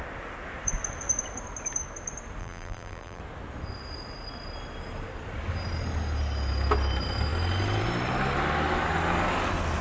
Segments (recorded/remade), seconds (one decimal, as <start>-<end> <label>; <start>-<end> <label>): 0.0-2.4 recorded; 2.4-3.2 remade; 3.2-9.8 recorded